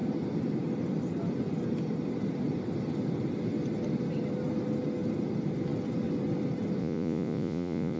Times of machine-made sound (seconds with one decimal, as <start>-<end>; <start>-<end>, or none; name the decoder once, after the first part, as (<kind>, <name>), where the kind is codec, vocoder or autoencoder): 6.8-8.0 (vocoder, Vocos)